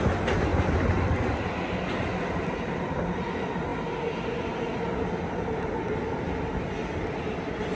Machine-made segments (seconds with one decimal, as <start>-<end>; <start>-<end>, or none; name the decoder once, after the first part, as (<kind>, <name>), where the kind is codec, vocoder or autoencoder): none